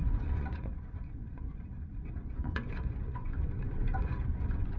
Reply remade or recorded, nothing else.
remade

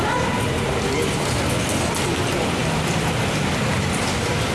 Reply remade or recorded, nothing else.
recorded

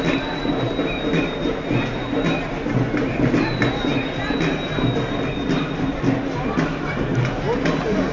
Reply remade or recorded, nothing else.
recorded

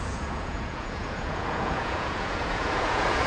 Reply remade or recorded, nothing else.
remade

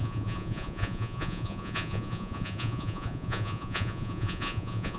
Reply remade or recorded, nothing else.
remade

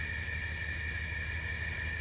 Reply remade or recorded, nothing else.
recorded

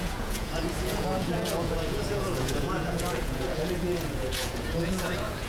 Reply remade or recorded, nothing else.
remade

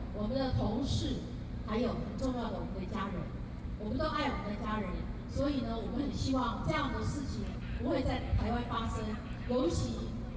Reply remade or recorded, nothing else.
recorded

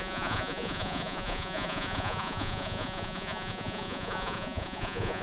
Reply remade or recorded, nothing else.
remade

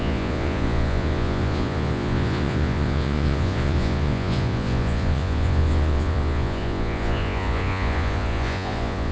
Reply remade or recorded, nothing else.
remade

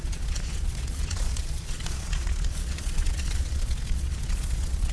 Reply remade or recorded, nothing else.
remade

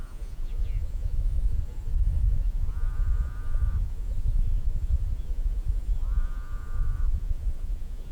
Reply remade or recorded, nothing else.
remade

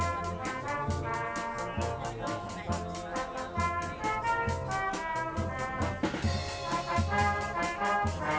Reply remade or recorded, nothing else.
recorded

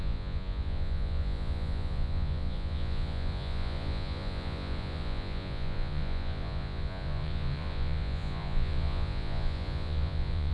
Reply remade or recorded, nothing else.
remade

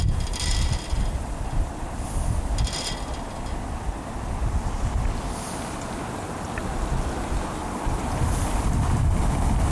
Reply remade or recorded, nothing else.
recorded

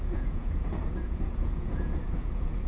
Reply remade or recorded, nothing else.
remade